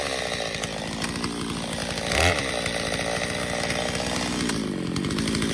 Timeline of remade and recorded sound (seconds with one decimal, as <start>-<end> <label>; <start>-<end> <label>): 0.0-5.5 recorded